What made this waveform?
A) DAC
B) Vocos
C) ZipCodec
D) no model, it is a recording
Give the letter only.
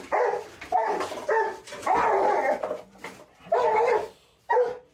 D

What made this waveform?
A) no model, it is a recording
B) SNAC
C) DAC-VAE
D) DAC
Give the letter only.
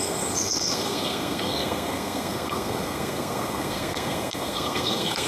B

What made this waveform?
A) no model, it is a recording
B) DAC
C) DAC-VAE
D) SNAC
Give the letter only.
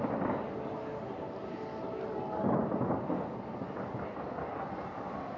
A